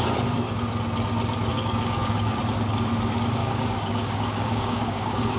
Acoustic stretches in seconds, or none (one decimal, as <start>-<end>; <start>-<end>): 0.0-1.5; 2.4-3.4